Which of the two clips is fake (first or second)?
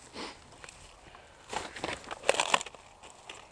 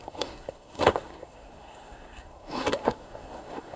second